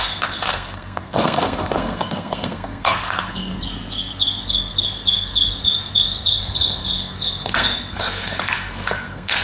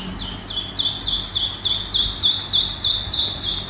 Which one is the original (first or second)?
second